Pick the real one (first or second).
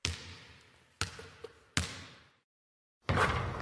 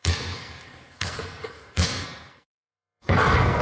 first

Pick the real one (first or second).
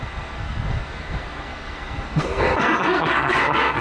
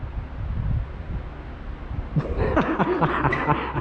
second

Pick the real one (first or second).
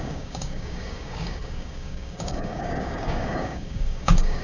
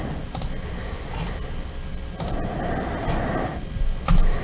second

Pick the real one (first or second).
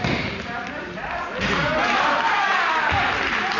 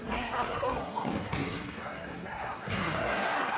first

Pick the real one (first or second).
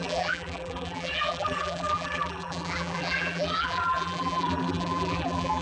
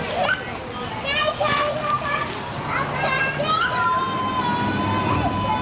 second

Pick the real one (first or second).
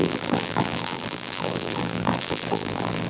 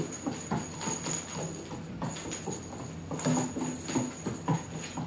second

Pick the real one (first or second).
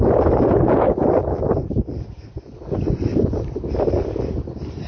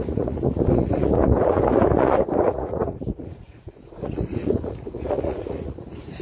first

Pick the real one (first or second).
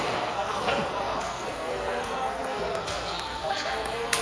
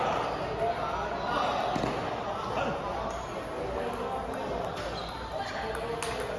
second